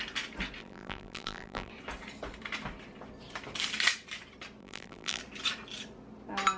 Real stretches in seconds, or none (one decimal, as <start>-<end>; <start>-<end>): 0.0-0.6; 1.7-4.6; 5.2-6.6